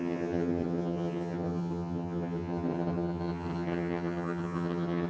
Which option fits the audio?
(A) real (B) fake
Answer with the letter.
B